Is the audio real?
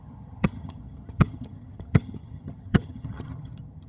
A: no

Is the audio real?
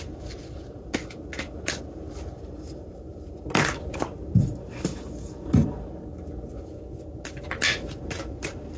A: yes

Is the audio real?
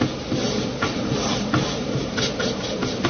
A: yes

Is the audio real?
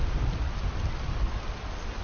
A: yes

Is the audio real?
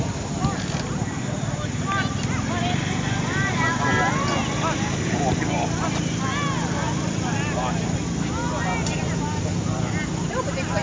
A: yes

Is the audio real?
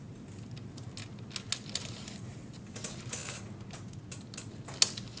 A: yes